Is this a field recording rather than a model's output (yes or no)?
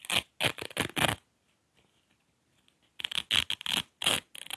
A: yes